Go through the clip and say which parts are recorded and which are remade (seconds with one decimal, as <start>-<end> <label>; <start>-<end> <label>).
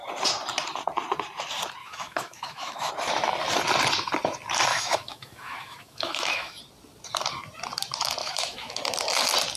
0.0-1.8 recorded; 1.8-2.9 remade; 2.9-4.7 recorded; 4.7-6.6 remade; 6.6-8.2 recorded; 8.2-8.8 remade; 8.8-9.6 recorded